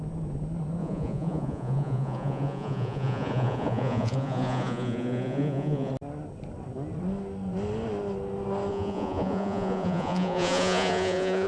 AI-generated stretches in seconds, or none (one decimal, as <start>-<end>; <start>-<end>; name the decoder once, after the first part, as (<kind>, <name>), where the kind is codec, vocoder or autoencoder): 0.8-5.9 (vocoder, Vocos); 8.7-11.5